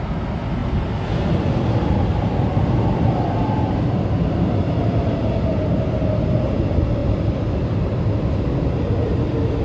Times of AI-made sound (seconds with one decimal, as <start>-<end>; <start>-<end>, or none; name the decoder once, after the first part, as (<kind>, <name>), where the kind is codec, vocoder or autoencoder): none

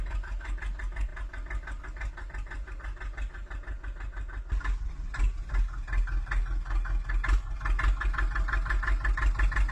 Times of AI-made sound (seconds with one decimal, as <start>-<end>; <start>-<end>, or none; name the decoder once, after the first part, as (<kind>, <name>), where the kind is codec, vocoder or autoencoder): none

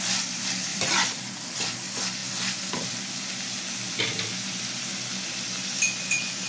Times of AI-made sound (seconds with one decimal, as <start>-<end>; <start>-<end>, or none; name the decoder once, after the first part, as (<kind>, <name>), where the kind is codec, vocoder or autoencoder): 0.7-1.3 (vocoder, BigVGAN v2)

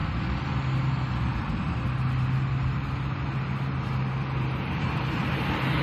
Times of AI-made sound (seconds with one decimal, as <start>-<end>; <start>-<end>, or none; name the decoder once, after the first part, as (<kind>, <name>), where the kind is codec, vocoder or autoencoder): 0.0-0.9 (vocoder, BigVGAN v2)

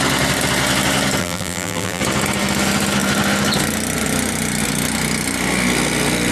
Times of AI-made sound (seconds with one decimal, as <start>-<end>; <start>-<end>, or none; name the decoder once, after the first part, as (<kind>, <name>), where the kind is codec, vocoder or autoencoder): 1.2-2.0 (vocoder, BigVGAN v2)

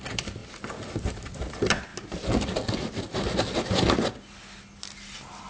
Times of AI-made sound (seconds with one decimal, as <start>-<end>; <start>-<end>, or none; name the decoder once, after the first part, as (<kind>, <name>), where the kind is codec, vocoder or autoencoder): none

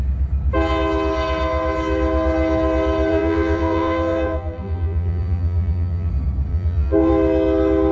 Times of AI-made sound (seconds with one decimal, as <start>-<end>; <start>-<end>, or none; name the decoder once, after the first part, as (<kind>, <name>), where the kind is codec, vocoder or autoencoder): 3.1-6.1 (vocoder, BigVGAN v2); 6.5-7.1

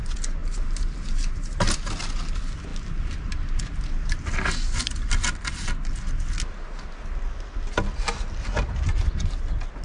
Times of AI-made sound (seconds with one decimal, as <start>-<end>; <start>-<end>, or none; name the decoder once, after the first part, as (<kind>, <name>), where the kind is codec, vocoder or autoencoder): 0.4-1.9 (vocoder, BigVGAN v2)